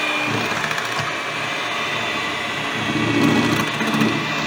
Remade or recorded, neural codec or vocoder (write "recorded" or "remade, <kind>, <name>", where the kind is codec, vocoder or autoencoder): recorded